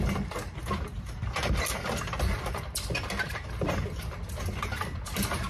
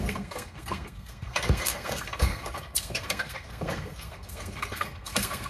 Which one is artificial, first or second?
second